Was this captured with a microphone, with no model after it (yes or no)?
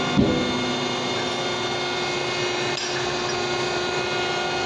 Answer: yes